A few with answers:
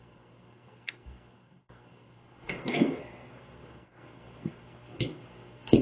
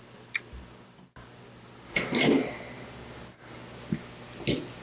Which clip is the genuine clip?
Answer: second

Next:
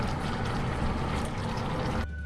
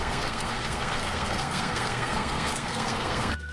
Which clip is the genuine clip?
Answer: first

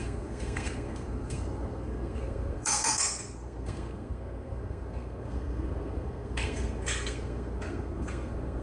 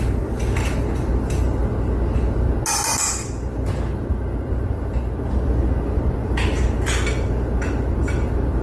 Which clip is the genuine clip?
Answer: second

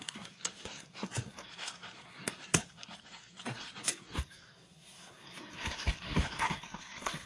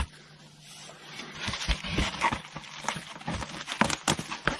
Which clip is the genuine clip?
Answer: second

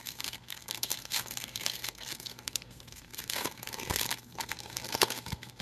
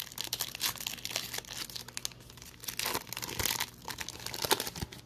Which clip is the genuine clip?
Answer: second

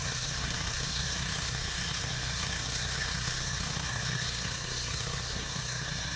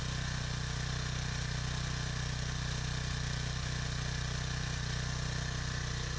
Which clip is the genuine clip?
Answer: second